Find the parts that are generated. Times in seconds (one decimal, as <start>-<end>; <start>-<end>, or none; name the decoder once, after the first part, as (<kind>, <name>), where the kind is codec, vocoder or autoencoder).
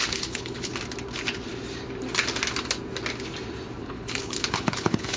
0.0-0.7 (codec, HILCodec); 3.8-5.2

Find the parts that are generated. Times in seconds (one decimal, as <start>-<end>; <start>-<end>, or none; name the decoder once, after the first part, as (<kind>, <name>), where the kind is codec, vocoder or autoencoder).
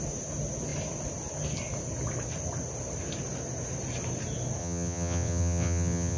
4.6-6.2 (vocoder, WaveNeXt)